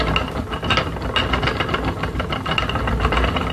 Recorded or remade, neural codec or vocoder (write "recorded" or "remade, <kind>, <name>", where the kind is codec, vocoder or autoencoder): recorded